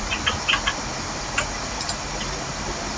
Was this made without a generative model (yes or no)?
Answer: yes